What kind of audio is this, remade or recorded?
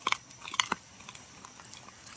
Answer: remade